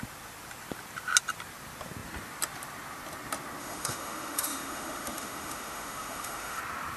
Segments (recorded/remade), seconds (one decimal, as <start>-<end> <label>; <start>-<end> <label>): 0.0-3.6 recorded; 3.6-6.6 remade; 6.6-7.0 recorded